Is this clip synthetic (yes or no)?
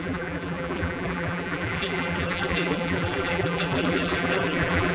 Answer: yes